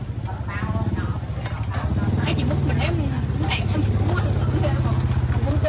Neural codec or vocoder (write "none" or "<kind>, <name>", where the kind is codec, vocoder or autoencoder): none